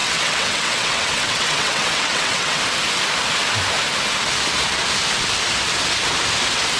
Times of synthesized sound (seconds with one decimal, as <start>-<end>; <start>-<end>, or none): 0.0-2.6